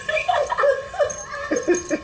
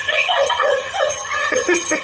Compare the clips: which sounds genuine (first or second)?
first